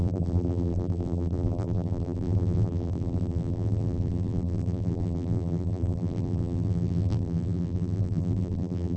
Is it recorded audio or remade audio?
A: remade